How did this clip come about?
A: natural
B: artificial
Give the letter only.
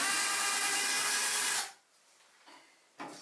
A